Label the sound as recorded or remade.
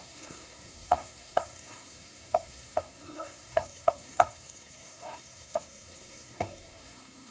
remade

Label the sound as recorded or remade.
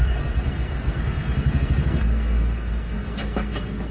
remade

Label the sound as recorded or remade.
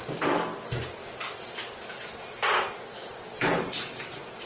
recorded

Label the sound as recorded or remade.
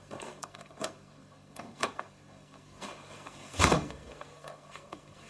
remade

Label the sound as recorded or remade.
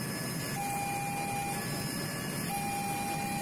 recorded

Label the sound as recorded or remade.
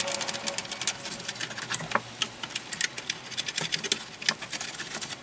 recorded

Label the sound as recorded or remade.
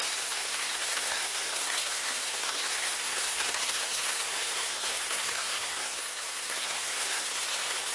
remade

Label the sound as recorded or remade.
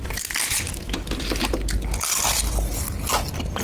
recorded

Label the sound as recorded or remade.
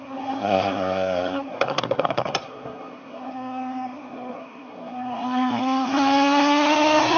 remade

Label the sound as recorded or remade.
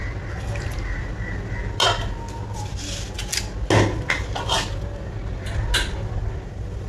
recorded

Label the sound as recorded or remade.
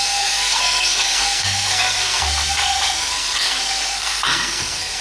remade